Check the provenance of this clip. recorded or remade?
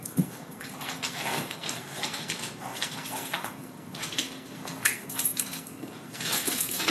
remade